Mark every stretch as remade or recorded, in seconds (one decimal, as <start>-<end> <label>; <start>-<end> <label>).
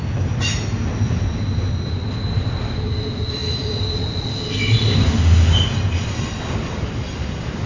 0.0-7.7 recorded